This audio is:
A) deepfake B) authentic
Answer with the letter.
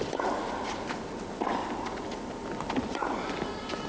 B